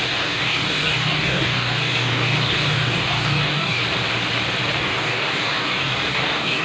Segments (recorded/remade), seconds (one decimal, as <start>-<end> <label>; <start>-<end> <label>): 0.0-3.8 remade; 3.8-4.8 recorded; 4.8-6.6 remade